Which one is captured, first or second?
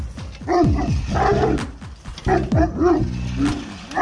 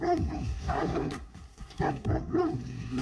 first